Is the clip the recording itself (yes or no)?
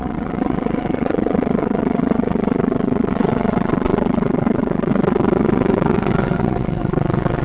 no